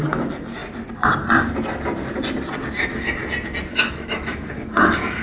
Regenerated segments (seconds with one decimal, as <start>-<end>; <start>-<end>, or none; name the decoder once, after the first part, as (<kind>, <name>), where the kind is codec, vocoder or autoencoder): 0.0-0.6 (autoencoder, DAC-VAE); 2.8-3.2; 3.7-5.2